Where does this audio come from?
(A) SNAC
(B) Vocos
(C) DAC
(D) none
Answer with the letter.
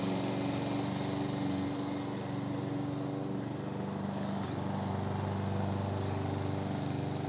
D